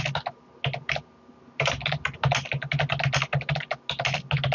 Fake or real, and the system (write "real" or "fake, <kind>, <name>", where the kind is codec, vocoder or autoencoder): real